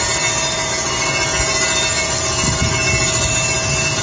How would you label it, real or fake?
real